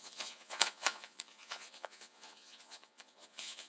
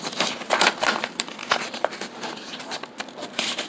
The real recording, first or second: second